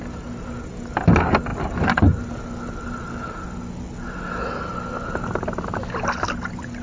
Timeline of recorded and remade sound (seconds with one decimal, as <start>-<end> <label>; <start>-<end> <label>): 0.0-6.8 recorded